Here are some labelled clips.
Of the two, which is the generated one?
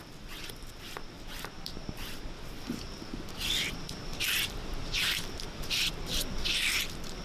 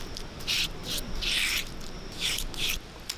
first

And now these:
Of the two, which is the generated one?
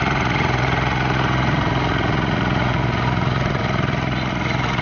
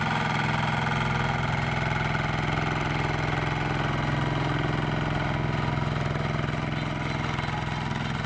first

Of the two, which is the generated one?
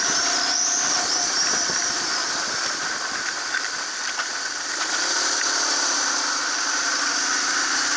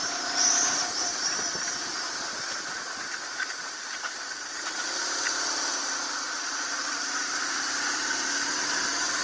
second